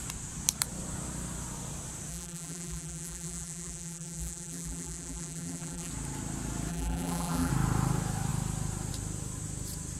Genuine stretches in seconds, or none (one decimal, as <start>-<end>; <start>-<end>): 0.0-2.1; 5.9-6.7; 7.5-10.0